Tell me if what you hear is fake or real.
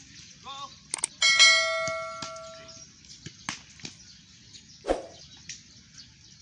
real